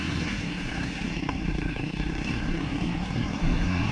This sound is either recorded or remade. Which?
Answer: remade